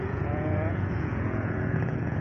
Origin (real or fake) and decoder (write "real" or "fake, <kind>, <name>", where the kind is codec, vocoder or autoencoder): fake, vocoder, Vocos